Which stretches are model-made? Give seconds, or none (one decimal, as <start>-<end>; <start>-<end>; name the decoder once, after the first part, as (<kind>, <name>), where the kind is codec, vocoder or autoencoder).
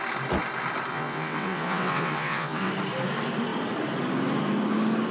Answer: 0.9-2.7 (vocoder, WaveNeXt)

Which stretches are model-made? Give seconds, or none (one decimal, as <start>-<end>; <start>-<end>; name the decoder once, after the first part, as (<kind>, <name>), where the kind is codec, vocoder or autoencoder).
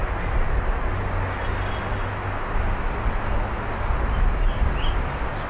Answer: none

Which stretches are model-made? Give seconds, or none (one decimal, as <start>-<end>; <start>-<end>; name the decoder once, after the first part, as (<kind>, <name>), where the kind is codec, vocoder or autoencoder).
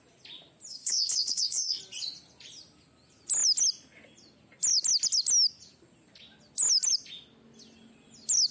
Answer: 0.7-1.8 (codec, SNAC)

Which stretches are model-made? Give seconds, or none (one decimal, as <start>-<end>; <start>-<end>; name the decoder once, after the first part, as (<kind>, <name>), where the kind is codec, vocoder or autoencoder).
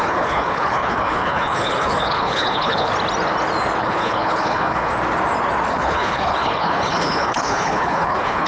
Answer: 0.0-2.9 (codec, HILCodec); 3.8-4.9; 5.7-8.5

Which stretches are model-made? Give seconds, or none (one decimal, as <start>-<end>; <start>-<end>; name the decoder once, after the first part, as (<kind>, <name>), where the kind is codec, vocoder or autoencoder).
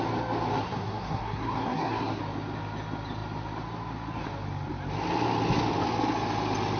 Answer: 0.5-2.2 (codec, SNAC)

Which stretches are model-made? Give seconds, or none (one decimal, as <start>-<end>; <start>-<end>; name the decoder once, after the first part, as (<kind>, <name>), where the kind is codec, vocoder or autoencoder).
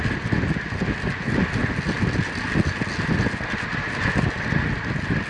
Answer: none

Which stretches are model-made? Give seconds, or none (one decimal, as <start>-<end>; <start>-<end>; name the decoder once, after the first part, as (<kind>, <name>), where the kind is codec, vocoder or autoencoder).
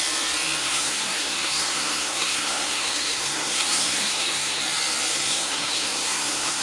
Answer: 0.6-4.6 (codec, SNAC); 5.1-6.6